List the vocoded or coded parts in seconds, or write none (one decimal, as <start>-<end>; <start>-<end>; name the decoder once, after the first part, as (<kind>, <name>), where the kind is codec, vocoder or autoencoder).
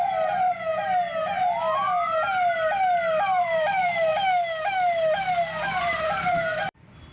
0.0-0.7 (vocoder, BigVGAN v2); 3.4-4.1; 5.8-7.1